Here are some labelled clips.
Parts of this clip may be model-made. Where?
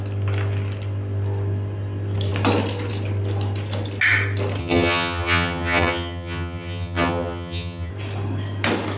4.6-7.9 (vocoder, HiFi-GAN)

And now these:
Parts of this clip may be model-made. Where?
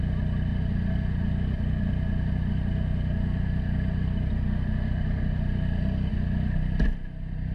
none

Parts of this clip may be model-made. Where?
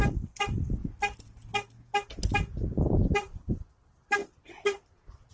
0.0-0.8 (vocoder, BigVGAN v2); 3.0-4.2